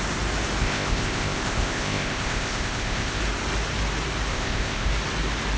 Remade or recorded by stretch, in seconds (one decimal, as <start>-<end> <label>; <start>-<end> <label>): 0.0-0.6 recorded; 0.6-3.2 remade; 3.2-4.3 recorded; 4.3-4.9 remade; 4.9-5.6 recorded